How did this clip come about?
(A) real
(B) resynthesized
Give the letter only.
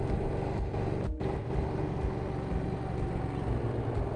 A